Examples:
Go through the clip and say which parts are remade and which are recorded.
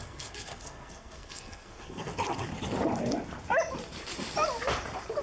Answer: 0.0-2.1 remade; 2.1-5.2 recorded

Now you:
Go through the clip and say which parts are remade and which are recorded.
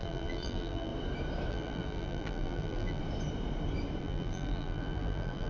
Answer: 0.0-0.9 remade; 0.9-1.5 recorded; 1.5-3.0 remade; 3.0-4.0 recorded; 4.0-5.5 remade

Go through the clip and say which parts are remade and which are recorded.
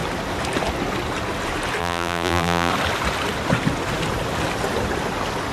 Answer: 0.0-1.8 recorded; 1.8-2.7 remade; 2.7-5.5 recorded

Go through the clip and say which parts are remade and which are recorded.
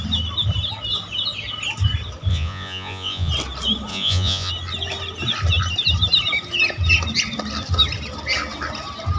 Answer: 0.0-2.3 recorded; 2.3-3.3 remade; 3.3-3.9 recorded; 3.9-4.5 remade; 4.5-9.2 recorded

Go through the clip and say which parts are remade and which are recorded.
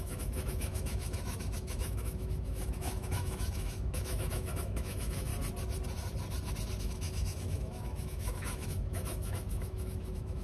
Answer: 0.0-5.3 remade; 5.3-6.8 recorded; 6.8-10.4 remade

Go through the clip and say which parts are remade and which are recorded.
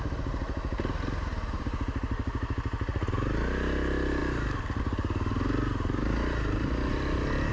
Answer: 0.0-7.5 recorded